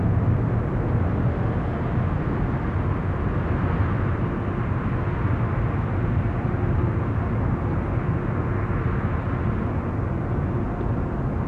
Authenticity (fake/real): real